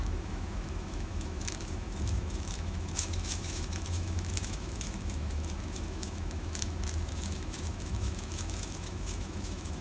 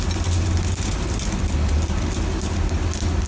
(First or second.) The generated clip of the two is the first